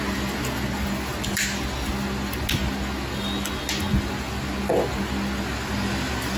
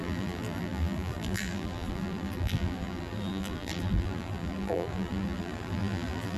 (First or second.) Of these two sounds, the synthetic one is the second